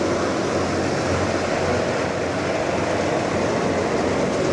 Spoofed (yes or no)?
no